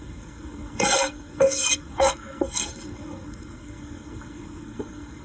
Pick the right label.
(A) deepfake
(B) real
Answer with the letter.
A